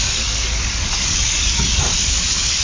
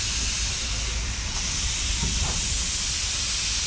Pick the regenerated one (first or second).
first